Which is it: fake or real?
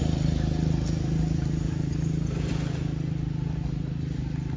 real